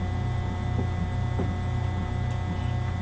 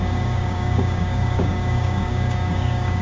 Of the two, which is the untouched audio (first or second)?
first